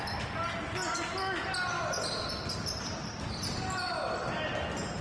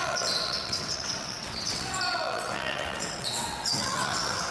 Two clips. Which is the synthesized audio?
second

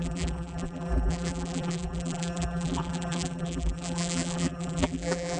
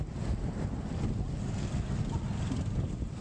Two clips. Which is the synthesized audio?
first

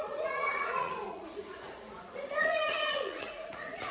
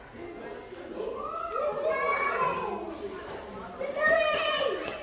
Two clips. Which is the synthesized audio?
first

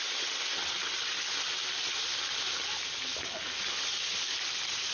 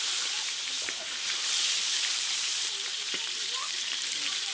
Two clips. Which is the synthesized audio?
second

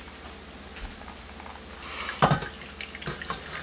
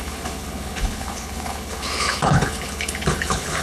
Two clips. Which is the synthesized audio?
second